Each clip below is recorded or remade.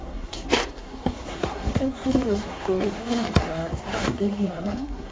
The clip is remade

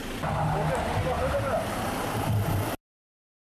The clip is recorded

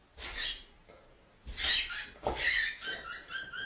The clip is recorded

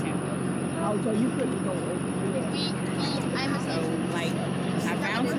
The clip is recorded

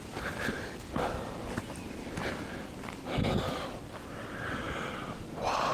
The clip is recorded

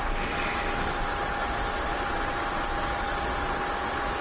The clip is recorded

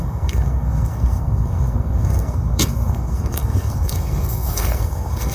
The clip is remade